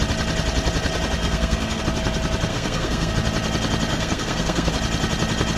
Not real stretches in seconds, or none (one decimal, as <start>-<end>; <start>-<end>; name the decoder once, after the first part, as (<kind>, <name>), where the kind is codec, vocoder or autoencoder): 1.2-1.8 (codec, SNAC); 2.5-3.1; 3.9-4.7